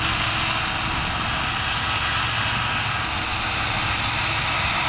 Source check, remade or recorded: recorded